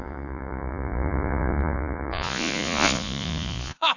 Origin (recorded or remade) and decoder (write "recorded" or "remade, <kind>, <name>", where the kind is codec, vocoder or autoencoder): remade, vocoder, Vocos